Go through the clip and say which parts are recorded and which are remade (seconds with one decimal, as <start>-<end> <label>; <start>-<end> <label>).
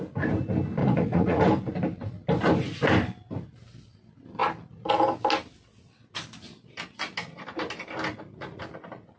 0.0-0.8 recorded; 0.8-1.4 remade; 1.4-9.2 recorded